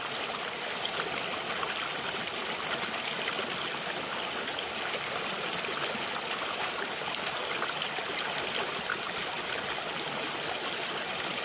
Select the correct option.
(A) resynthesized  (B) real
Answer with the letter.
B